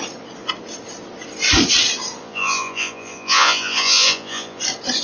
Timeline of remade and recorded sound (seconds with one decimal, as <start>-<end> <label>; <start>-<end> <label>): 0.0-2.2 recorded; 2.2-4.6 remade; 4.6-5.0 recorded